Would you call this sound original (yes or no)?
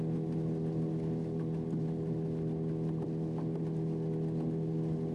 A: yes